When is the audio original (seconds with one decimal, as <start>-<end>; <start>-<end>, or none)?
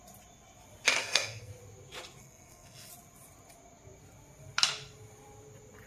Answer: 0.0-1.0; 1.5-2.2; 2.9-5.9